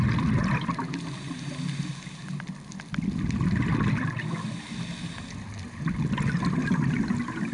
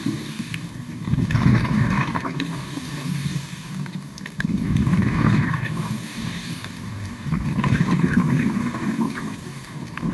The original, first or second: first